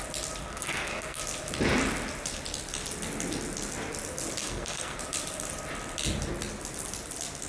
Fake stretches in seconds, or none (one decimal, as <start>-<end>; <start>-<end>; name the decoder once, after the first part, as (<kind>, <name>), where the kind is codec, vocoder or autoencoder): 0.4-1.2 (codec, SNAC); 4.4-5.0